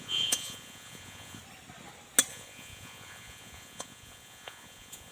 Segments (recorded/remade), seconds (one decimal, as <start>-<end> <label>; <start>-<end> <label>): 0.0-1.4 remade; 1.4-2.3 recorded; 2.3-5.1 remade